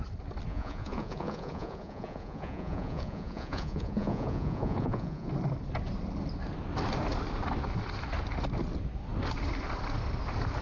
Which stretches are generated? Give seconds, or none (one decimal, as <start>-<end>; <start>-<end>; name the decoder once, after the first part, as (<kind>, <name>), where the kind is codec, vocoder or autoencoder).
0.5-5.3 (vocoder, Vocos)